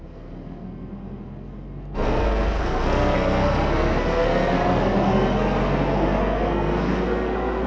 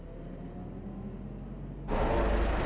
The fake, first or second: first